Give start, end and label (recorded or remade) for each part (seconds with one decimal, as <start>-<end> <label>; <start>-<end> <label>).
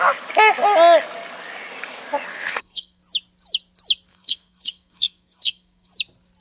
0.0-2.3 recorded; 2.3-3.0 remade; 3.0-4.1 recorded; 4.1-5.9 remade; 5.9-6.4 recorded